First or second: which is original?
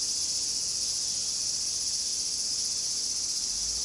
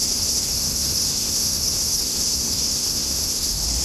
first